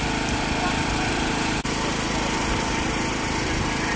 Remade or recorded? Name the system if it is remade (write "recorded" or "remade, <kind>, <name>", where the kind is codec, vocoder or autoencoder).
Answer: recorded